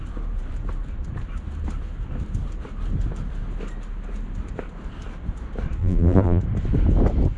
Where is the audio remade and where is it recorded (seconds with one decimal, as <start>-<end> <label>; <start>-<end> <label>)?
0.0-5.8 recorded; 5.8-6.4 remade; 6.4-7.4 recorded